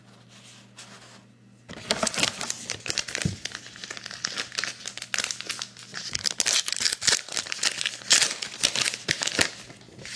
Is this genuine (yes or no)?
yes